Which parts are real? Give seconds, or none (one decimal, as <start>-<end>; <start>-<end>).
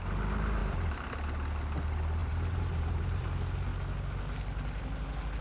0.0-0.6; 1.1-2.2; 3.3-5.4